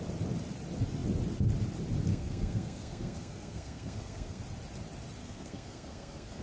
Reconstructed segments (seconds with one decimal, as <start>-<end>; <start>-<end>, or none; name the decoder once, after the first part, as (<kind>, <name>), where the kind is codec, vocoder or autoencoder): 2.1-4.4 (codec, SNAC); 5.2-6.4